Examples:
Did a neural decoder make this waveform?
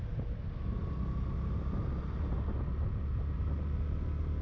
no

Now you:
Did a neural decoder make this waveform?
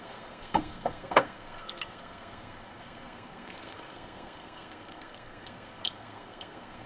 yes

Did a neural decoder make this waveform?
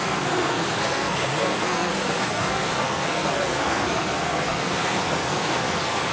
yes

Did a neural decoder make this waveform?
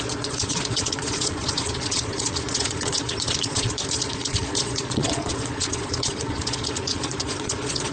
yes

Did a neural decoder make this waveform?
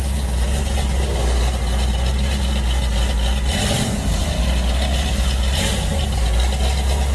no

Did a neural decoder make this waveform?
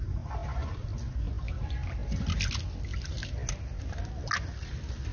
no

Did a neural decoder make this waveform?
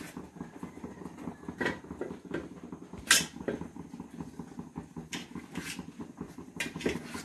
no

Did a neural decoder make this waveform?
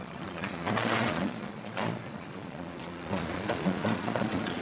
yes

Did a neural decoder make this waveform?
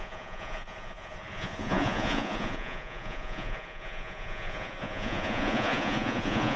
yes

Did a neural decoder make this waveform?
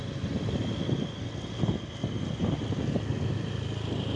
no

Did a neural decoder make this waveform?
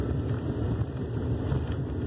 no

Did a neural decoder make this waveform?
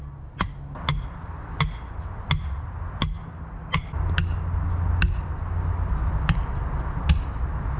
no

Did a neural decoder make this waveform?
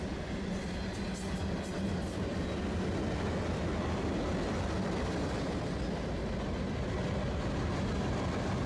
no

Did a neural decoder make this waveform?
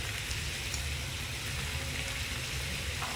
no